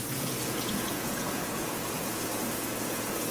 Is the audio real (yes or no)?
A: no